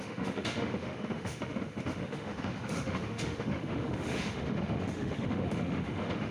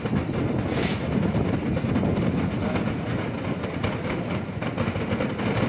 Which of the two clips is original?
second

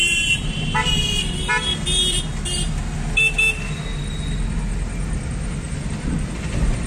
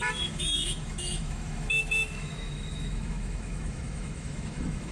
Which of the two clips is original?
first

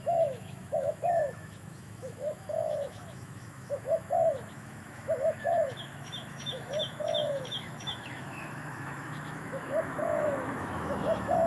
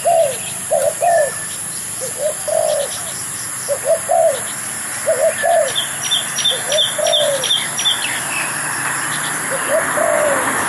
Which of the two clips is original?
second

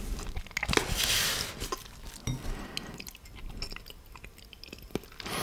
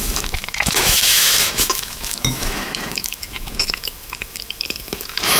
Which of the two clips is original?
first